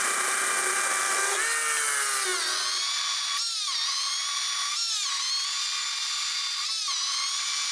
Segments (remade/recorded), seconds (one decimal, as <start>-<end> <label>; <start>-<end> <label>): 0.0-7.7 recorded